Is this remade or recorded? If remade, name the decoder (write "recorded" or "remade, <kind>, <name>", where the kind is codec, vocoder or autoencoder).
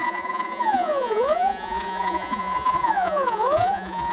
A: remade, vocoder, Vocos